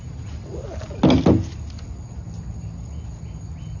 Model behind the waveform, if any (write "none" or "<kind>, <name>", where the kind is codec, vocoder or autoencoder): none